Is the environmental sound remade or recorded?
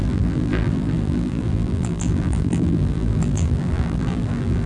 remade